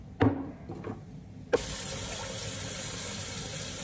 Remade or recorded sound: recorded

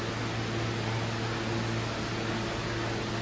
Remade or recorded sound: recorded